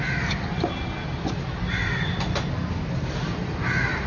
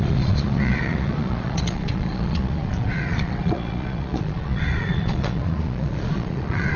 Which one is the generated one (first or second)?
second